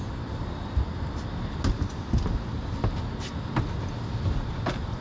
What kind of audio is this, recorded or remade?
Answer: recorded